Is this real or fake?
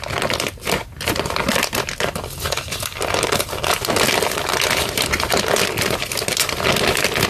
real